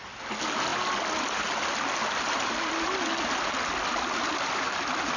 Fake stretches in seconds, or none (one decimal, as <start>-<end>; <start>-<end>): none